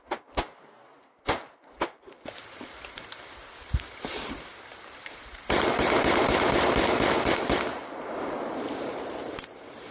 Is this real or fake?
fake